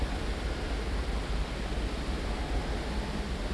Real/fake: real